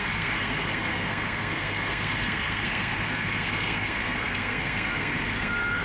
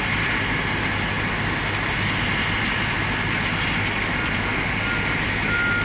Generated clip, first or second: first